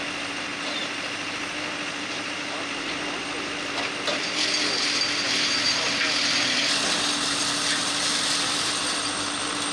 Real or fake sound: real